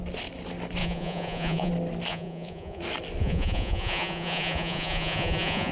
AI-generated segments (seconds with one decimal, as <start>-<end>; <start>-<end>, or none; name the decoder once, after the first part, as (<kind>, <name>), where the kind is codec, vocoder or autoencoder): 0.8-1.7 (vocoder, Vocos); 2.1-2.8; 3.2-5.7